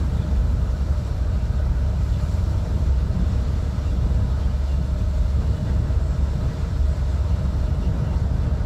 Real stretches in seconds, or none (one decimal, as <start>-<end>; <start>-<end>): 0.0-0.4; 4.5-5.6; 7.6-8.7